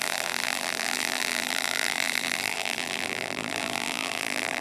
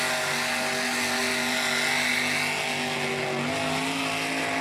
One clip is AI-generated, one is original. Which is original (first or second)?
second